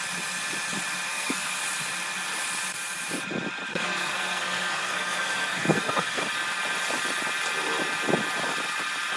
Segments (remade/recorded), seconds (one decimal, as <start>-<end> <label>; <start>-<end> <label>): 0.0-1.1 recorded; 1.1-1.6 remade; 1.6-3.7 recorded; 3.7-6.3 remade; 6.3-9.2 recorded

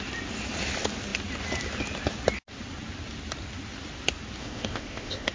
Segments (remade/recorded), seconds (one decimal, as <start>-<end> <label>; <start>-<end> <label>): 0.0-4.4 recorded; 4.4-5.3 remade